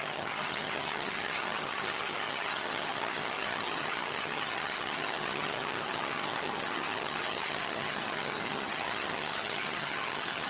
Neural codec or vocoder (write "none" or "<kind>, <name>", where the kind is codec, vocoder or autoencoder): vocoder, HiFi-GAN